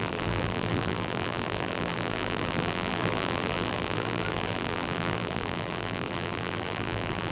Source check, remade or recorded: remade